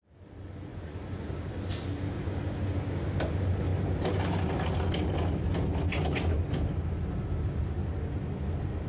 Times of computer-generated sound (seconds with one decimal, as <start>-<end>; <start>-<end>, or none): 0.7-1.3